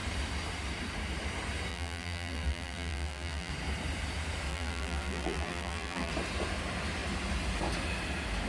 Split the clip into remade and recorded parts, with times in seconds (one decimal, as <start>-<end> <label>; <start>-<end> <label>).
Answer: 0.0-1.7 recorded; 1.7-3.5 remade; 3.5-4.5 recorded; 4.5-6.1 remade; 6.1-8.5 recorded